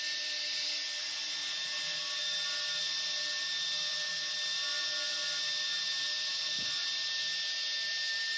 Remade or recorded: recorded